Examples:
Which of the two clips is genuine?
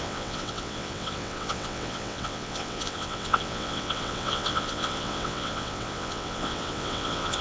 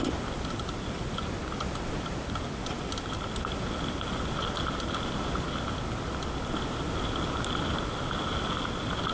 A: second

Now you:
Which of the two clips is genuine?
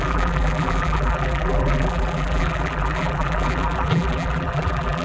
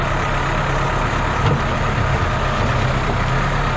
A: second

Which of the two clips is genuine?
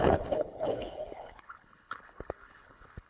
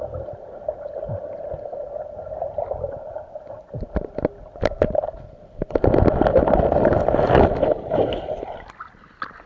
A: second